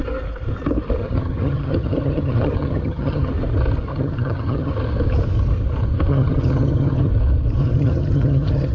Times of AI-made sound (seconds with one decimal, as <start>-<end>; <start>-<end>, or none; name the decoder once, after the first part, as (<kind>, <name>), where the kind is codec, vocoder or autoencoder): 1.0-3.3 (vocoder, HiFi-GAN); 3.9-4.7; 6.1-7.1; 7.6-8.7